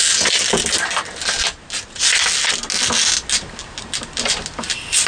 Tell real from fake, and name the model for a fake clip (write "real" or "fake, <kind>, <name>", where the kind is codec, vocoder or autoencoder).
real